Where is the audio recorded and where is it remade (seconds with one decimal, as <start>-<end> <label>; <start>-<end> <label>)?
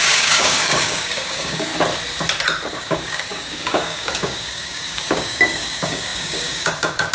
0.0-1.7 remade; 1.7-2.7 recorded; 2.7-7.1 remade